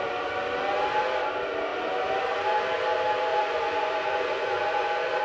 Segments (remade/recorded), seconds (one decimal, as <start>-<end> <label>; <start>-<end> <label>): 0.0-3.3 recorded; 3.3-5.2 remade